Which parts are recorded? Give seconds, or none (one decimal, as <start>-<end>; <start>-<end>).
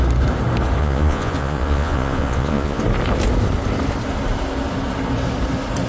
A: 0.0-0.8; 2.8-5.9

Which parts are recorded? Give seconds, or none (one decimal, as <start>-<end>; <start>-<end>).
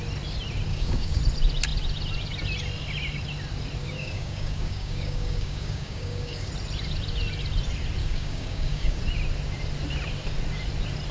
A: 0.0-0.7; 1.2-3.8; 6.5-8.0; 9.0-11.1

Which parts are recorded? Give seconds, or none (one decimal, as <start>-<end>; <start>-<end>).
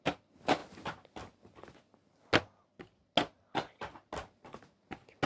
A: 0.0-5.3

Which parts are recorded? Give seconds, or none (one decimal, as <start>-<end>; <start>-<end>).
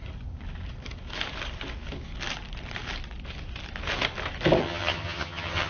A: 0.0-4.6